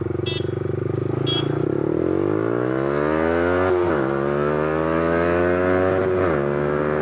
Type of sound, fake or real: real